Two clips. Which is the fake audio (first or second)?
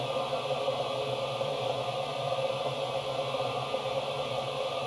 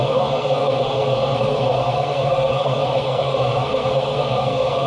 second